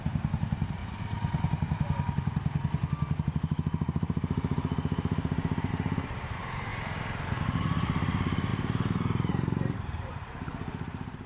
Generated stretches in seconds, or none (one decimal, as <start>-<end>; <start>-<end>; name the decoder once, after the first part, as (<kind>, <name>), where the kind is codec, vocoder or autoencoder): 0.0-0.8 (vocoder, BigVGAN v2); 5.7-8.5; 9.3-11.3